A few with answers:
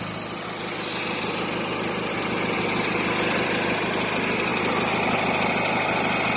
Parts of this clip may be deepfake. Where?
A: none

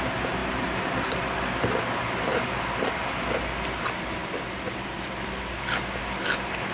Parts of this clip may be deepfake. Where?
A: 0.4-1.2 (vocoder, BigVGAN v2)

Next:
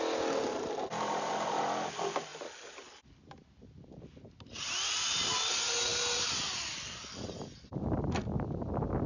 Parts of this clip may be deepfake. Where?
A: none

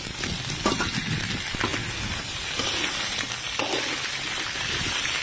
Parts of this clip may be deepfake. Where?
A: none

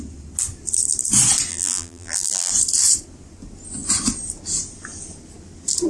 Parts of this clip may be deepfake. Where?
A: 1.5-2.5 (vocoder, BigVGAN v2)